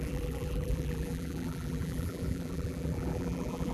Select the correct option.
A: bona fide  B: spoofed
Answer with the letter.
B